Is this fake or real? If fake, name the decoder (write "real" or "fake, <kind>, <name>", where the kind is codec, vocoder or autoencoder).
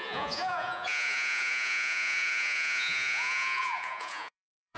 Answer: fake, vocoder, Vocos